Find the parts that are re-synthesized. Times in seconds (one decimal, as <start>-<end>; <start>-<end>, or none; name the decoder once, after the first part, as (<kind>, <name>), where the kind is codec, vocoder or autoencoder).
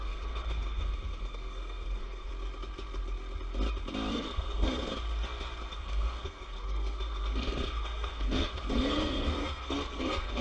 0.0-2.3 (codec, SNAC); 4.1-4.9; 5.7-10.4